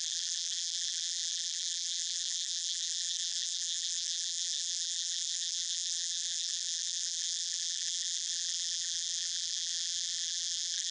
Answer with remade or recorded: remade